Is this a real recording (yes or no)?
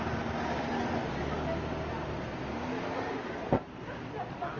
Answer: yes